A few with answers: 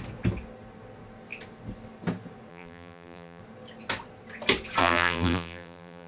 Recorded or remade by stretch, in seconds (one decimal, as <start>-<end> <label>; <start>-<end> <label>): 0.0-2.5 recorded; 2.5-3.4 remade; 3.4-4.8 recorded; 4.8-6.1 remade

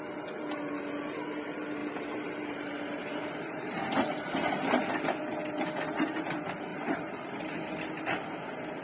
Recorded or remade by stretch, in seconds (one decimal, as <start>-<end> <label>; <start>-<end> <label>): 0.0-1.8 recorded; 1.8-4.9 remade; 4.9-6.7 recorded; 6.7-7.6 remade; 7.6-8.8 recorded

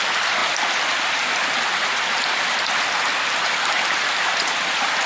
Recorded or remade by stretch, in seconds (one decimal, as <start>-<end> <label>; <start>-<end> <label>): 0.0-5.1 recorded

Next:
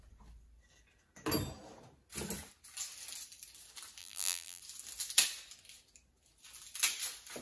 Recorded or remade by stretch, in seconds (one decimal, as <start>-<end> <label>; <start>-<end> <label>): 0.0-4.0 recorded; 4.0-4.6 remade; 4.6-7.4 recorded

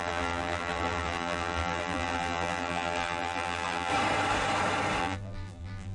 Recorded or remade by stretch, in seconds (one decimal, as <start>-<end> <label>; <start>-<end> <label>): 0.0-3.9 remade; 3.9-5.0 recorded; 5.0-5.9 remade

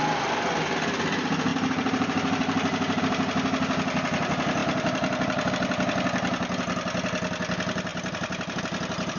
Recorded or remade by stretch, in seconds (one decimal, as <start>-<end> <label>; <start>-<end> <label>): 0.0-1.5 recorded; 1.5-3.0 remade; 3.0-4.6 recorded; 4.6-5.5 remade; 5.5-7.9 recorded; 7.9-8.6 remade; 8.6-9.2 recorded

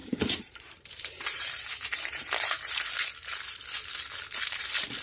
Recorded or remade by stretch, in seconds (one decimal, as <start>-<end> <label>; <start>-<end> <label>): 0.0-2.9 remade; 2.9-5.0 recorded

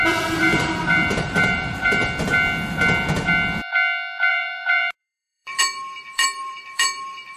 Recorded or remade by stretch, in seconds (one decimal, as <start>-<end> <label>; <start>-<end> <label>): 0.0-2.0 remade; 2.0-4.3 recorded; 4.3-7.4 remade